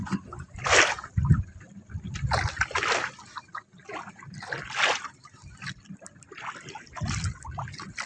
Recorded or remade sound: recorded